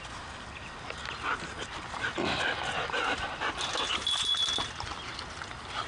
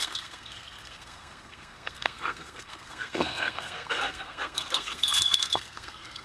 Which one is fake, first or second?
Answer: second